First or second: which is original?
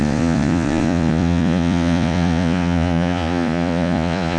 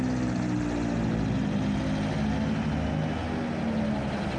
second